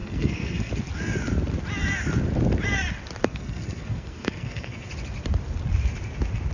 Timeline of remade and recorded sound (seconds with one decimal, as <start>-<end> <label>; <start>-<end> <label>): 0.0-0.7 remade; 0.7-3.2 recorded; 3.2-4.9 remade; 4.9-6.5 recorded

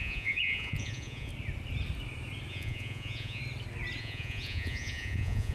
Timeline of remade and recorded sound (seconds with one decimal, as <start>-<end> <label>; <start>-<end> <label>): 0.0-1.3 remade; 1.3-2.5 recorded; 2.5-3.4 remade; 3.4-4.0 recorded; 4.0-5.5 remade

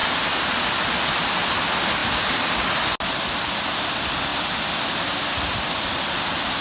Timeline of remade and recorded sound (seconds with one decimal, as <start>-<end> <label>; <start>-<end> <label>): 0.0-1.5 remade; 1.5-2.0 recorded; 2.0-2.5 remade; 2.5-4.3 recorded; 4.3-4.9 remade; 4.9-6.6 recorded

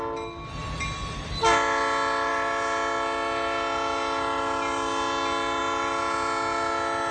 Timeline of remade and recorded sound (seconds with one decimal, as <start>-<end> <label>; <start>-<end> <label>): 0.0-7.1 recorded

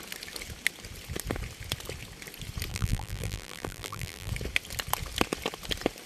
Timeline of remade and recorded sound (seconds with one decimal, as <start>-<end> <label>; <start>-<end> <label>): 0.0-2.7 recorded; 2.7-4.3 remade; 4.3-6.1 recorded

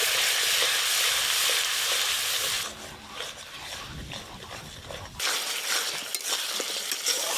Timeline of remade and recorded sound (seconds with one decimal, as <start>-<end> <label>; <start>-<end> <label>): 0.0-7.4 recorded

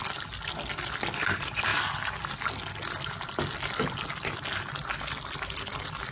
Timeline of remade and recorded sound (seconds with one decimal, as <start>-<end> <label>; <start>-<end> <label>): 0.0-6.1 recorded

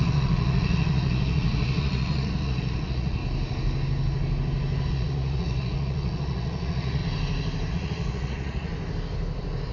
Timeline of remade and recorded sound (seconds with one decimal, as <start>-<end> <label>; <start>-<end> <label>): 0.0-3.2 remade; 3.2-4.9 recorded; 4.9-7.0 remade; 7.0-7.7 recorded; 7.7-8.7 remade; 8.7-9.7 recorded